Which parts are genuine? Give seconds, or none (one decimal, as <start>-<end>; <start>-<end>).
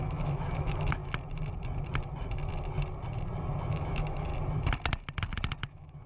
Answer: 1.0-3.7; 4.3-5.6